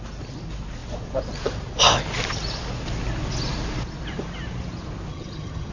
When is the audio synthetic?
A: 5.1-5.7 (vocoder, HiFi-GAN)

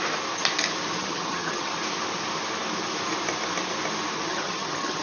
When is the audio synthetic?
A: 1.0-1.7 (vocoder, HiFi-GAN); 4.3-5.0

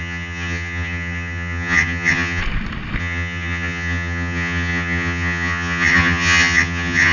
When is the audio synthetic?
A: 0.0-2.4 (vocoder, HiFi-GAN); 3.0-7.1

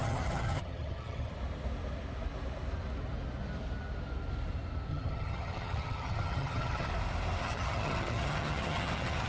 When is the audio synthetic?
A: 0.0-1.3 (vocoder, HiFi-GAN); 4.9-6.9; 7.4-9.3

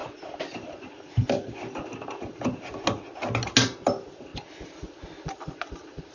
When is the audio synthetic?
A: none

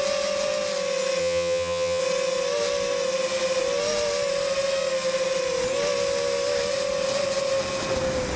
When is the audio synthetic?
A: 1.2-2.0 (vocoder, HiFi-GAN)

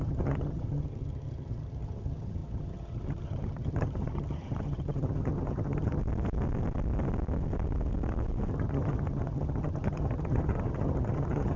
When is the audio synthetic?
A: 0.0-6.0 (vocoder, HiFi-GAN); 8.5-11.6